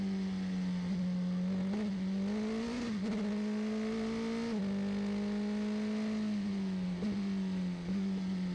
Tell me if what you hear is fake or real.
real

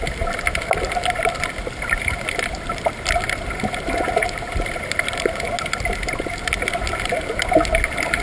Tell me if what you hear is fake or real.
real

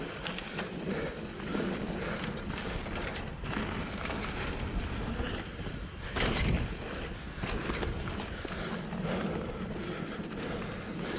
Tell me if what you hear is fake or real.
real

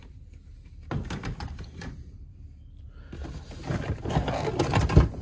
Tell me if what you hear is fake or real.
real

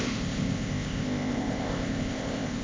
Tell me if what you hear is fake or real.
fake